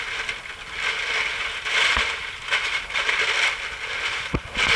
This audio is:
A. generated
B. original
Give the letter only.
B